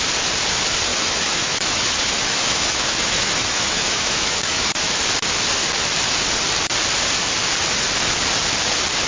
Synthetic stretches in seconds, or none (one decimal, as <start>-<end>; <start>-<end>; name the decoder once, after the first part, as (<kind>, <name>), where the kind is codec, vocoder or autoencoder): 0.9-5.0 (autoencoder, DAC-VAE)

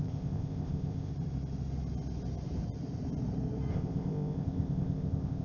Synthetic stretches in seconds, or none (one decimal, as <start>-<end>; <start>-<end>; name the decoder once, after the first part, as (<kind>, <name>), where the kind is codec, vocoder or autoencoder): 0.0-1.1 (codec, ZipCodec); 3.7-5.4

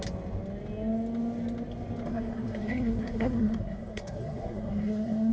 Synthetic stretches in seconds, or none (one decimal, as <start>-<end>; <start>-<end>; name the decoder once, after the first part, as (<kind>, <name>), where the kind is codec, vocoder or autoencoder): 2.1-5.3 (codec, SNAC)

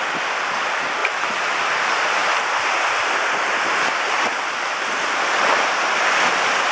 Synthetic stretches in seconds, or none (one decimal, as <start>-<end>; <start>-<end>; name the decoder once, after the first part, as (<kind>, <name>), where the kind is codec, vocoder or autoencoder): none

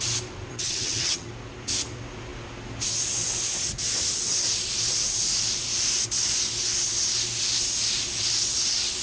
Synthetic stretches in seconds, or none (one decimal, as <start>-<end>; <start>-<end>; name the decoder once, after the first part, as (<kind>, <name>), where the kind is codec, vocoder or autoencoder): 0.5-1.3 (vocoder, HiFi-GAN)

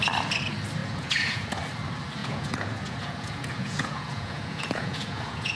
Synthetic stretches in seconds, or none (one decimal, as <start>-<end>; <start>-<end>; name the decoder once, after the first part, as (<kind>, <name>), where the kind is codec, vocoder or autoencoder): 0.8-1.6 (vocoder, Vocos); 2.2-5.6

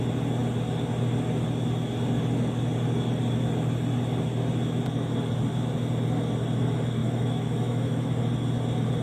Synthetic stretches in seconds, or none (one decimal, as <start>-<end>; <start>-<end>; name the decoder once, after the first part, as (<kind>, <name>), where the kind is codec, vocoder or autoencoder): 7.0-8.1 (autoencoder, DAC-VAE)

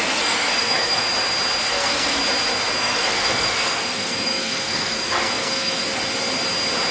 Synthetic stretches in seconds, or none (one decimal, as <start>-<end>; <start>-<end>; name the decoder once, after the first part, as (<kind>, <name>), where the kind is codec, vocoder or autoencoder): 0.0-1.0 (codec, SNAC); 1.7-2.2; 2.8-5.8